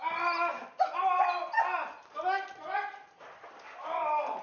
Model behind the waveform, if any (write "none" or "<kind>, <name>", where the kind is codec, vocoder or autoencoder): none